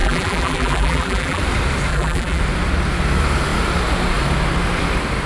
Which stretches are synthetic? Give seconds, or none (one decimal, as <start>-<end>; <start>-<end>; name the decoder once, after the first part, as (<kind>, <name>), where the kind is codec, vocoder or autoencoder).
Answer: 0.0-1.4 (vocoder, BigVGAN v2); 1.9-2.4